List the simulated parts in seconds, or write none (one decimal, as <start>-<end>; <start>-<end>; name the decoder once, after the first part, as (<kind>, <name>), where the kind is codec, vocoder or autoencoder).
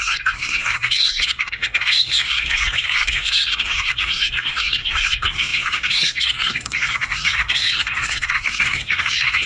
0.0-9.5 (codec, SNAC)